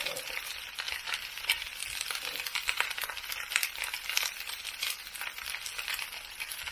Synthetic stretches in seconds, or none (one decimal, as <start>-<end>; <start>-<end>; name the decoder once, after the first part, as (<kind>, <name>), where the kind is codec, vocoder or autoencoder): 0.0-6.7 (vocoder, BigVGAN v2)